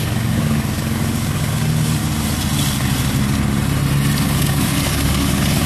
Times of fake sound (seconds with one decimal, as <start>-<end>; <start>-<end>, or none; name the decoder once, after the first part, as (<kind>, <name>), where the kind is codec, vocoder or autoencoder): 0.0-2.0 (codec, DAC); 4.2-5.7